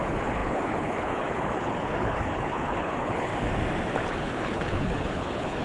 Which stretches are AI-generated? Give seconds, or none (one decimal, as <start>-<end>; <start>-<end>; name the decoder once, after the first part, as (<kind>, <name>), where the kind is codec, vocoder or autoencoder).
0.0-3.3 (codec, HILCodec); 4.1-5.6